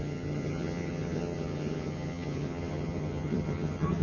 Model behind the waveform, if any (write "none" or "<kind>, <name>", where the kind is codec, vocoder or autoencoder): vocoder, HiFi-GAN